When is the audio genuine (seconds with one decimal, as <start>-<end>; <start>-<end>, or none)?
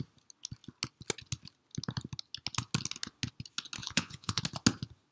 0.0-3.8; 4.4-5.1